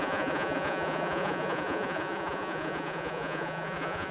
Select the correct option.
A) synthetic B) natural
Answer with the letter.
A